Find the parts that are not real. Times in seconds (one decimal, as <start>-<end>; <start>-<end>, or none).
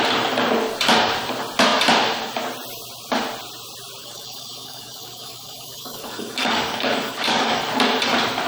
4.0-7.6